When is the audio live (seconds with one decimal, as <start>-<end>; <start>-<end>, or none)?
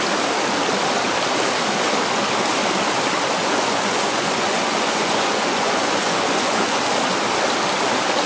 0.0-3.4; 6.8-8.3